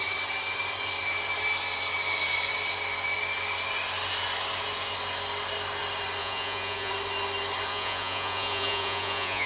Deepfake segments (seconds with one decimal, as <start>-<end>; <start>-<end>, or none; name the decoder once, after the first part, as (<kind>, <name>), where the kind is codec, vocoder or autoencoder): 6.2-6.9 (vocoder, Vocos); 7.7-9.5